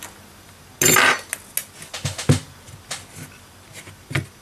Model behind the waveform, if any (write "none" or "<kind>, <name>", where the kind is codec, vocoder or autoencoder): none